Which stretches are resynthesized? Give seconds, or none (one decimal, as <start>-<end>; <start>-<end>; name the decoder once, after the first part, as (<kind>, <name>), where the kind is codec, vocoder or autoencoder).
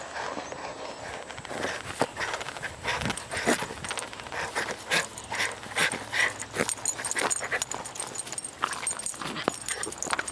none